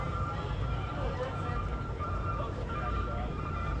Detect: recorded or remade remade